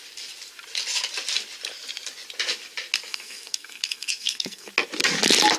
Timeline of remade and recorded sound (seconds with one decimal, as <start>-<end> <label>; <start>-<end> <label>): 0.0-3.1 recorded; 3.1-4.7 remade; 4.7-5.6 recorded